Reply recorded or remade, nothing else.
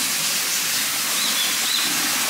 recorded